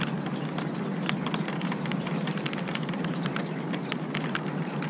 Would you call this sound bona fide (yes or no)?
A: yes